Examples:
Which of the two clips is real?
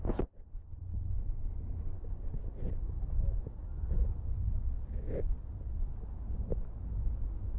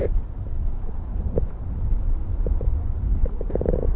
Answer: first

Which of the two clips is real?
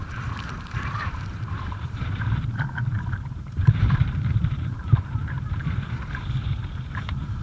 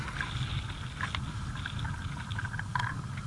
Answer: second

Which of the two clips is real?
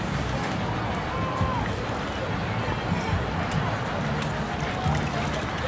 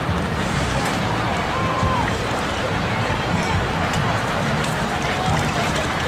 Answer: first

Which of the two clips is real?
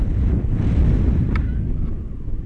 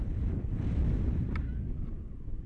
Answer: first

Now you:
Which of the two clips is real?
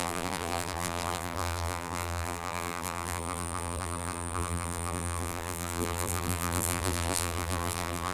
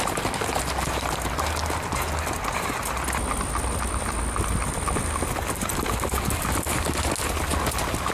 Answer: second